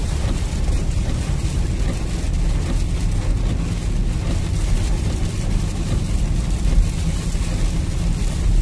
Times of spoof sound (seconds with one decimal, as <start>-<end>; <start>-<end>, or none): 0.0-1.4